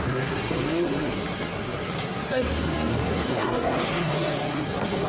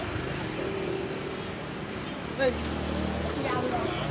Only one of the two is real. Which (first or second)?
second